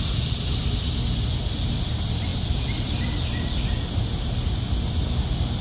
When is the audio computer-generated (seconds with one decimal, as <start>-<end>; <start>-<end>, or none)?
none